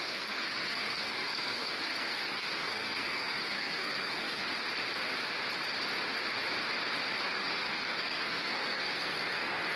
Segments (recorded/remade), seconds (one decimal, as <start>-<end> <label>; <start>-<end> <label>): 0.0-4.4 remade; 4.4-7.2 recorded; 7.2-9.8 remade